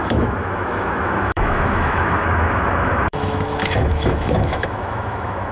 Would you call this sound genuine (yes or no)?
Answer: no